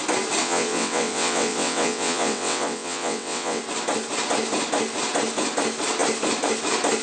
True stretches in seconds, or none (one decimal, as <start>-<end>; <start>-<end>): 0.0-0.4; 3.6-7.0